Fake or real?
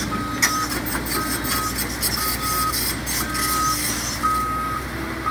real